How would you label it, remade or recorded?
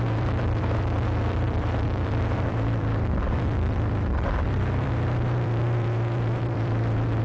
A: remade